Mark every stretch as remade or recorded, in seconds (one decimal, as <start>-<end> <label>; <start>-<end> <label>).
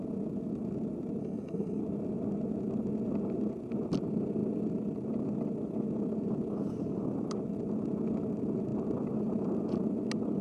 0.0-1.2 recorded; 1.2-1.8 remade; 1.8-10.4 recorded